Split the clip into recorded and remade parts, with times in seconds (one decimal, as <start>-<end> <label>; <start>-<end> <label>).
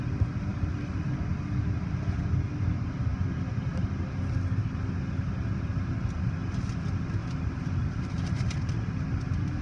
0.0-0.5 recorded; 0.5-1.1 remade; 1.1-7.2 recorded; 7.2-9.2 remade; 9.2-9.6 recorded